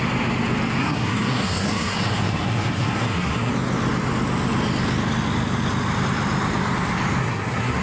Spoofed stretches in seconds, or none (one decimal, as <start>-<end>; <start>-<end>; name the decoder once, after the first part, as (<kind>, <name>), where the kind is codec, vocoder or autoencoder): 0.8-3.5 (codec, SNAC); 7.2-7.8